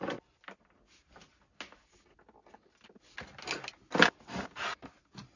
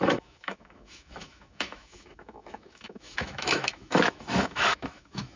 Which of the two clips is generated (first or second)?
second